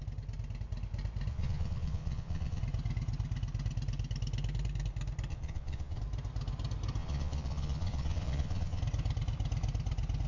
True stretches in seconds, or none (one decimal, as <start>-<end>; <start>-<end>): 0.0-1.3; 2.6-5.3; 6.0-7.0; 8.8-10.3